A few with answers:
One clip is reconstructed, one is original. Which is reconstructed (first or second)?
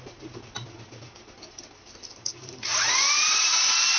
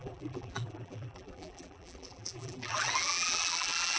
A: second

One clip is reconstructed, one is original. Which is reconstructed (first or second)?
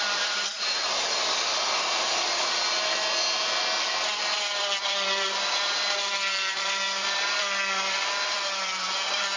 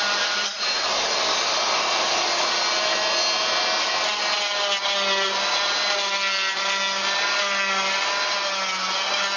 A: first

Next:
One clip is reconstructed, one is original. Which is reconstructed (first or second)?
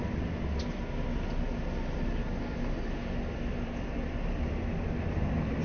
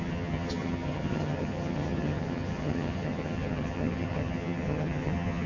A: second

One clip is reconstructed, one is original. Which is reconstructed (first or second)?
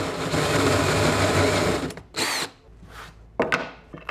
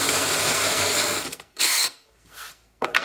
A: second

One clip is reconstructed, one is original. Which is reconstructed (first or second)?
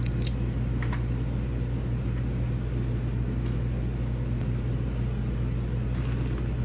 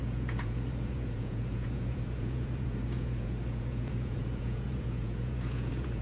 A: second